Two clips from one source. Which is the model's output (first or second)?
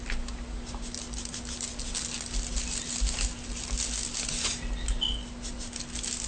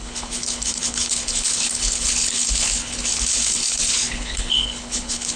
second